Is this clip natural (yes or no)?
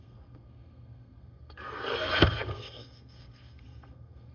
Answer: no